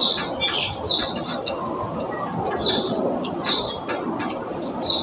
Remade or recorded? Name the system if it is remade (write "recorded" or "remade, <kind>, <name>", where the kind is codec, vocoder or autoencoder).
recorded